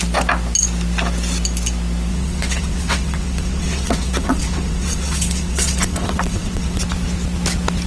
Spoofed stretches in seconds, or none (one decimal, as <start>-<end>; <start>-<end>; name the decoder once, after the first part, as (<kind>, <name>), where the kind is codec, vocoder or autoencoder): 2.1-6.8 (vocoder, WaveNeXt)